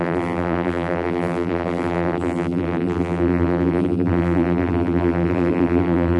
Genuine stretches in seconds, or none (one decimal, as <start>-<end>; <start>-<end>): none

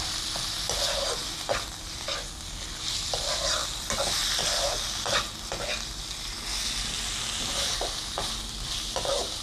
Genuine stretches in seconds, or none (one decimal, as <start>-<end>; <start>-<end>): 0.0-9.4

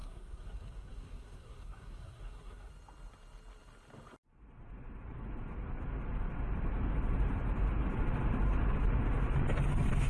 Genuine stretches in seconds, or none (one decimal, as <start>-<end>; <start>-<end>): 2.7-10.1

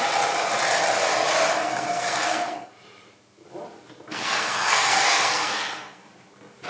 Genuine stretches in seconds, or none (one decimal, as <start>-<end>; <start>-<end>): 0.0-1.6; 2.7-4.1; 6.1-6.7